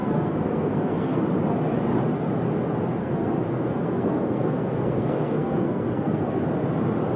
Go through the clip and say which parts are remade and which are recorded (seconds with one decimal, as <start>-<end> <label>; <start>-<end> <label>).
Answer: 0.0-1.2 remade; 1.2-3.0 recorded; 3.0-6.4 remade; 6.4-7.2 recorded